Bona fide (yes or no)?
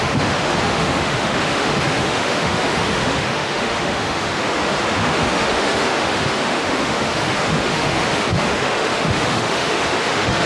no